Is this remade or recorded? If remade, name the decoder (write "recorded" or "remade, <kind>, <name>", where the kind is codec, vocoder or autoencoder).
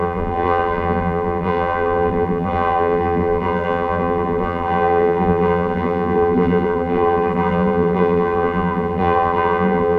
remade, vocoder, BigVGAN v2